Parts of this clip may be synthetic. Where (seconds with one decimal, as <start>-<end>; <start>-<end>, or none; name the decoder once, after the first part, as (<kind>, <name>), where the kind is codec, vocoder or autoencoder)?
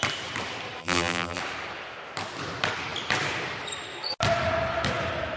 0.8-1.4 (vocoder, BigVGAN v2)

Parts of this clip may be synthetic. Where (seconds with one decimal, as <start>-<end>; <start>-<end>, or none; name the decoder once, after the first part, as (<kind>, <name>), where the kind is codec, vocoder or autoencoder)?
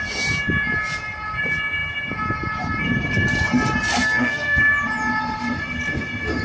3.9-4.6 (codec, SNAC)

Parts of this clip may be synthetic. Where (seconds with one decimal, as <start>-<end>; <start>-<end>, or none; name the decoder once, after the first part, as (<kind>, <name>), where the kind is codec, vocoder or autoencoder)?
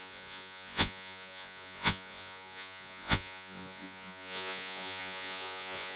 0.0-6.0 (vocoder, Vocos)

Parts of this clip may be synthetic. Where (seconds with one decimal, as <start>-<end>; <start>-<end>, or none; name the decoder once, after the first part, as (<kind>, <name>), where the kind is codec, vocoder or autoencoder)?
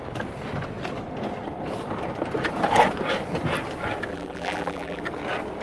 4.1-5.0 (vocoder, BigVGAN v2)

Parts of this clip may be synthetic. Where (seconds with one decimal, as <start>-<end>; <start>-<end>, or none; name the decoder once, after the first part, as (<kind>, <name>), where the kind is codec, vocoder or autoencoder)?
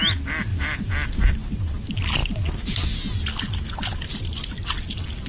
none